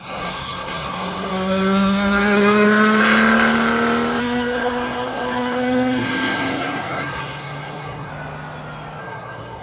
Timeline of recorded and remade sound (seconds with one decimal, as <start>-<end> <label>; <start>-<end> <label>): 0.0-3.0 remade; 3.0-4.2 recorded; 4.2-8.1 remade; 8.1-9.0 recorded; 9.0-9.6 remade